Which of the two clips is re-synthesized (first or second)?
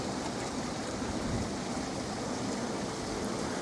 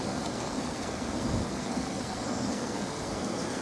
second